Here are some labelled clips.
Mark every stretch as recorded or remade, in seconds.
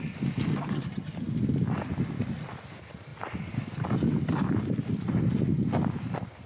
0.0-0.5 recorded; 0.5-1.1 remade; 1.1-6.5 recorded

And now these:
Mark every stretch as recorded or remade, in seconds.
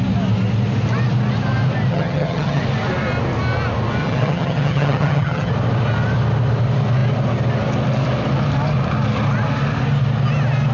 0.0-1.9 recorded; 1.9-2.6 remade; 2.6-4.0 recorded; 4.0-5.5 remade; 5.5-10.7 recorded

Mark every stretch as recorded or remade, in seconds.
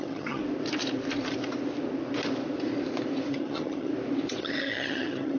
0.0-0.4 remade; 0.4-3.3 recorded; 3.3-3.9 remade; 3.9-4.4 recorded; 4.4-5.4 remade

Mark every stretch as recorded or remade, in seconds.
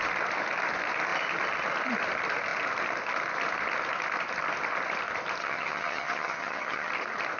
0.0-5.4 recorded; 5.4-6.9 remade; 6.9-7.4 recorded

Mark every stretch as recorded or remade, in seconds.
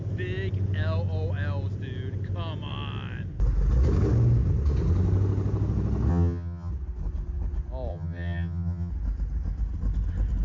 0.0-6.1 recorded; 6.1-6.7 remade; 6.7-7.9 recorded; 7.9-8.9 remade; 8.9-10.4 recorded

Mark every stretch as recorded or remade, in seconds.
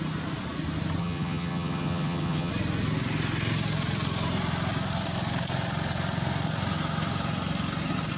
0.0-1.0 recorded; 1.0-2.5 remade; 2.5-8.2 recorded